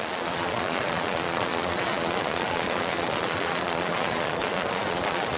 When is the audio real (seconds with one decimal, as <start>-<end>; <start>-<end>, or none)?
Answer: none